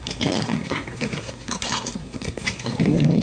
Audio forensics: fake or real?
fake